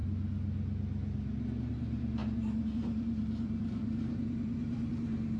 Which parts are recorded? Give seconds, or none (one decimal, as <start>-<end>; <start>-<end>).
0.0-1.7